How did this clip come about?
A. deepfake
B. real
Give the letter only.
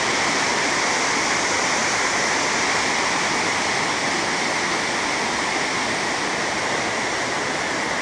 B